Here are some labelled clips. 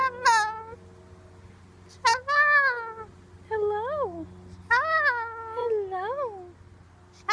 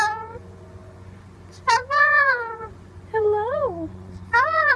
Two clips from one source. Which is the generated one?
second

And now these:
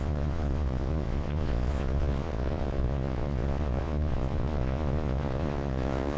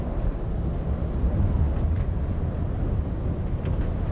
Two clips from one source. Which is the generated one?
first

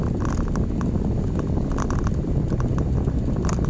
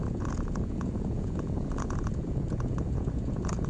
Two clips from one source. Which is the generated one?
second